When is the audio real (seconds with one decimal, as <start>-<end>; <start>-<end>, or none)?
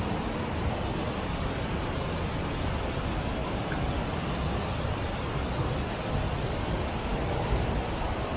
0.0-8.4